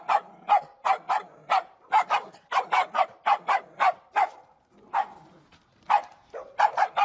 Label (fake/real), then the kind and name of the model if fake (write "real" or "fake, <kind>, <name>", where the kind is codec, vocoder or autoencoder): real